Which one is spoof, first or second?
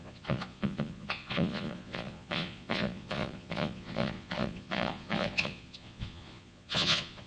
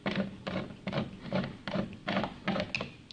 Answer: first